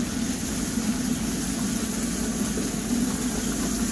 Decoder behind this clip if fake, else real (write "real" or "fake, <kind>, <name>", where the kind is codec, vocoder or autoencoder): real